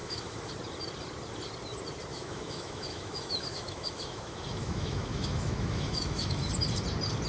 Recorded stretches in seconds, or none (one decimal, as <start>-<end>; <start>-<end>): 0.5-2.1; 6.5-7.3